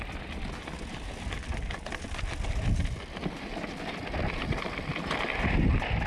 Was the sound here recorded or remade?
recorded